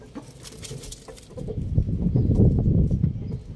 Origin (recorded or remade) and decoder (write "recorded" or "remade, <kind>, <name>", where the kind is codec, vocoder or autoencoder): recorded